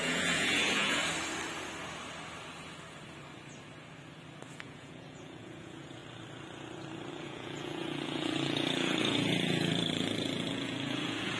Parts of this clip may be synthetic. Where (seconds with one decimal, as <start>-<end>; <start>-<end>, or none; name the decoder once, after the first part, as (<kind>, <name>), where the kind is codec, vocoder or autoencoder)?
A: 0.0-1.0 (vocoder, Vocos); 4.5-6.0; 7.1-11.4